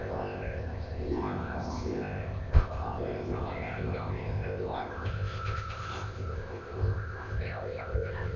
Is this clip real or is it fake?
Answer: fake